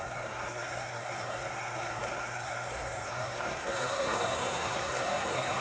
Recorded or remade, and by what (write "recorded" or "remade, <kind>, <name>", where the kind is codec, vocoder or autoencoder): remade, codec, SNAC